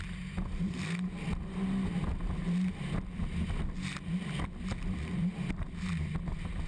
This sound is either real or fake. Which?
real